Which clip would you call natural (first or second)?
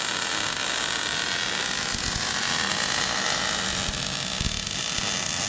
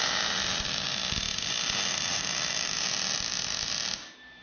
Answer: first